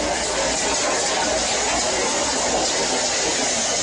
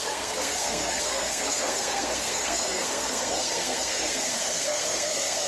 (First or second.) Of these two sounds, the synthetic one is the second